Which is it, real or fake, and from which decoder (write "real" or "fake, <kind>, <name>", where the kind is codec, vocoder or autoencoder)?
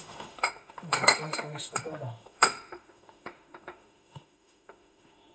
fake, autoencoder, DAC-VAE